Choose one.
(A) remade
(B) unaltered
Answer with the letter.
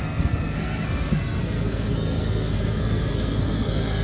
A